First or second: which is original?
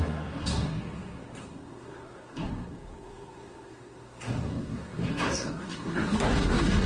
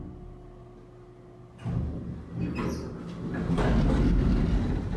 second